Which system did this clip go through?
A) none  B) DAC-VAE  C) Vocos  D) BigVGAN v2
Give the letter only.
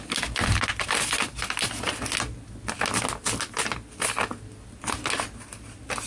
A